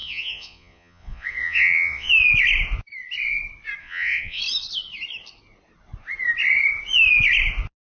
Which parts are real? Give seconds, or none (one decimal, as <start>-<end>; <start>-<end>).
2.1-3.8; 4.4-8.0